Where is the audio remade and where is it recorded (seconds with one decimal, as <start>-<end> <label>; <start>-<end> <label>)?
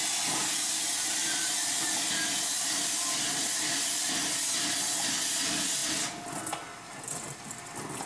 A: 0.0-8.1 recorded